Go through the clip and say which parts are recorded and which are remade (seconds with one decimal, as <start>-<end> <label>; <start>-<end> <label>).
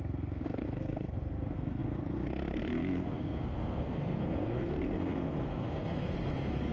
0.0-6.7 remade